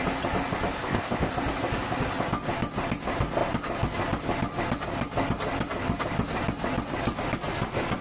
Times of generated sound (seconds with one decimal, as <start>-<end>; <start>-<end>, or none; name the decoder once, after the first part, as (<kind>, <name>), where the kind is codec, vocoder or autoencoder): 0.8-1.3 (codec, ZipCodec)